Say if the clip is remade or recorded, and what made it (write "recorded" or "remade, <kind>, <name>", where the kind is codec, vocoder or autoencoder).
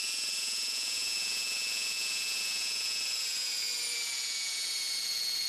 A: remade, vocoder, Vocos